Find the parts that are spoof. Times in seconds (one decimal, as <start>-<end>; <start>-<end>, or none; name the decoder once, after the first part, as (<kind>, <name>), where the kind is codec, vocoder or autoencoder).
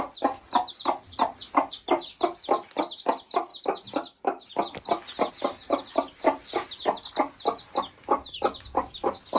none